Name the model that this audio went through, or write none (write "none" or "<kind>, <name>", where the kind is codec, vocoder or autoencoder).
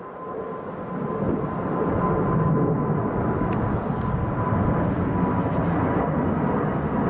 none